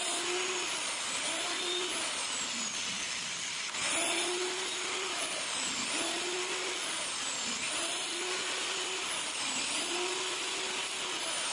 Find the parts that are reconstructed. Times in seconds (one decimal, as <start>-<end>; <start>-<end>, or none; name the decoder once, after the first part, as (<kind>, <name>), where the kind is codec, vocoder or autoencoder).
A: none